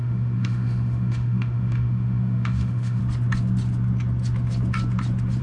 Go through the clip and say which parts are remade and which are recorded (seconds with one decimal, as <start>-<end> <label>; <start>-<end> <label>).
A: 0.0-3.0 remade; 3.0-5.4 recorded